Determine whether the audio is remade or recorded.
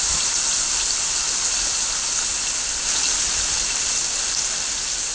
recorded